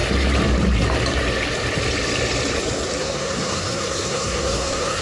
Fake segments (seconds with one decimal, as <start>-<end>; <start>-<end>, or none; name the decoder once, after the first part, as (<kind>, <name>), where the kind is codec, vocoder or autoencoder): 3.0-5.0 (codec, SNAC)